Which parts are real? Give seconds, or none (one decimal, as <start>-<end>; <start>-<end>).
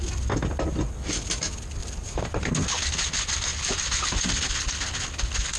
0.0-1.8; 2.4-5.6